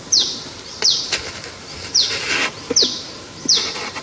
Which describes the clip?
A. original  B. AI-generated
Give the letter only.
A